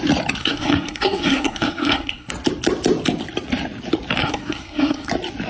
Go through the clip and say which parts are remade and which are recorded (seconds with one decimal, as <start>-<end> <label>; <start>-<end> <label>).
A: 0.0-0.4 recorded; 0.4-2.3 remade; 2.3-4.2 recorded; 4.2-5.1 remade; 5.1-5.5 recorded

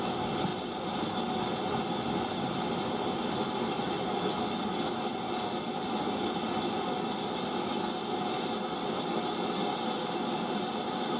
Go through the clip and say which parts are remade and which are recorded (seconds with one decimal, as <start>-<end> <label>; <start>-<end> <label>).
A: 0.0-11.2 recorded

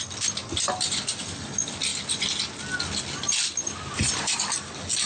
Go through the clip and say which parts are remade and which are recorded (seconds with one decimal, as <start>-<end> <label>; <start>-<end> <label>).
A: 0.0-5.1 recorded

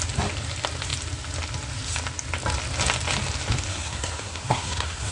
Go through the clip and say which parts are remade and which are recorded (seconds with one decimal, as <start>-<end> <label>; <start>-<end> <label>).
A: 0.0-3.7 recorded; 3.7-5.1 remade